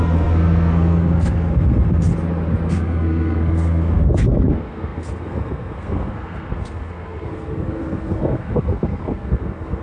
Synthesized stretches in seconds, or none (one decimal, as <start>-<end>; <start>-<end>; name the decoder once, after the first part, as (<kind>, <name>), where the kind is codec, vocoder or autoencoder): 0.0-2.1 (codec, SNAC); 2.7-9.8